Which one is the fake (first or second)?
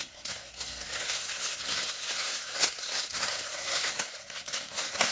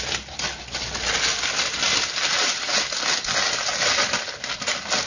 first